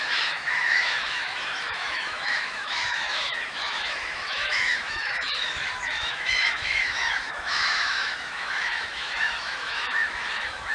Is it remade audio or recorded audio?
remade